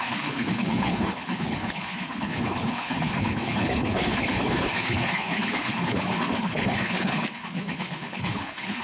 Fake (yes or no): yes